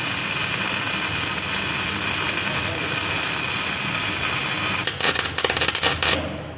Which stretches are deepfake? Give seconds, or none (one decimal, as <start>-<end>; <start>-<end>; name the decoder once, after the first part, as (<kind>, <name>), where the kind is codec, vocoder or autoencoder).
none